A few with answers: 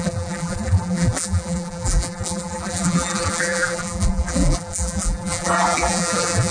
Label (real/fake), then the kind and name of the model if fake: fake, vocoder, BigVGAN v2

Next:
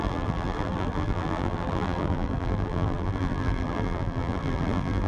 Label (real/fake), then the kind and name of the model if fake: fake, vocoder, BigVGAN v2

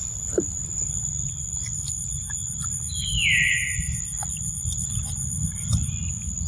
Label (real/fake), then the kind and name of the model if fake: real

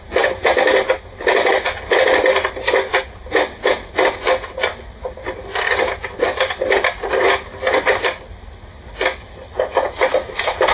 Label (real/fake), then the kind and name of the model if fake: real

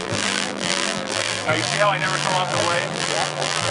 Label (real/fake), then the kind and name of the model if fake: fake, vocoder, BigVGAN v2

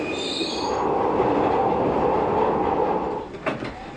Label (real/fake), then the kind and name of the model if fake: real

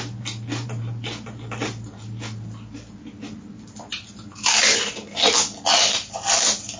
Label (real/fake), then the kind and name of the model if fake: real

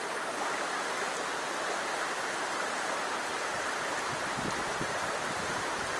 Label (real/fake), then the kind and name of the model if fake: fake, vocoder, BigVGAN v2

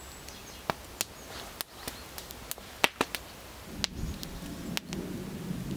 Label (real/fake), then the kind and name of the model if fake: real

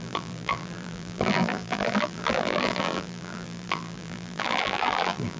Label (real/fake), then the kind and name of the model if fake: fake, vocoder, BigVGAN v2